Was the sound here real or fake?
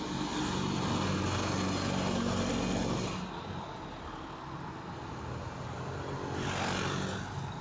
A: real